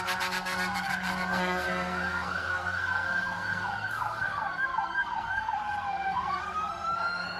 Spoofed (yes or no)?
yes